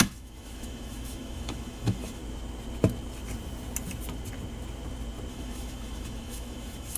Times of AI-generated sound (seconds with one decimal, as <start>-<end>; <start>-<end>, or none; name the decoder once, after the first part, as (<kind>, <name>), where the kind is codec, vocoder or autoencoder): 0.0-2.2 (autoencoder, DAC-VAE); 5.3-7.0

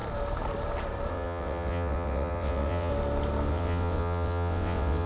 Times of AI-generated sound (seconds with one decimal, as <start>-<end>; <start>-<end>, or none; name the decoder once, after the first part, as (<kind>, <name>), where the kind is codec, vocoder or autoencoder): 1.1-2.9 (vocoder, WaveNeXt); 3.5-5.1

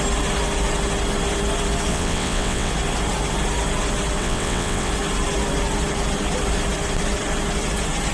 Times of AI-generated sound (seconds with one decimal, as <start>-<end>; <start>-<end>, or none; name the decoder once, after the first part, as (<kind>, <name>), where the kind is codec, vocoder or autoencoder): 1.9-2.7 (vocoder, WaveNeXt); 4.2-4.9

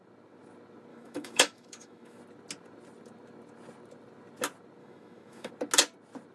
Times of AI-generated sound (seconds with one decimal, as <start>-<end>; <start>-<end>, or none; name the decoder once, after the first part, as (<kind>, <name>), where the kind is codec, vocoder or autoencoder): 0.9-2.2 (autoencoder, DAC-VAE); 4.8-5.5

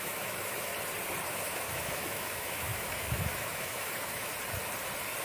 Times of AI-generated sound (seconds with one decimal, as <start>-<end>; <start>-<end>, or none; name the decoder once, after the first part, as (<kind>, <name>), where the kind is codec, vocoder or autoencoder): 0.0-0.7 (autoencoder, DAC-VAE); 1.3-4.3